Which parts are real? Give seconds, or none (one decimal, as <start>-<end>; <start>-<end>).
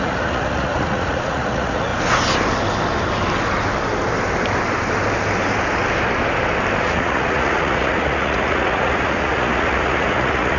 1.9-6.8